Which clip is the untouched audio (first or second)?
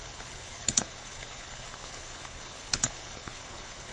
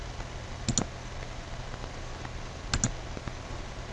second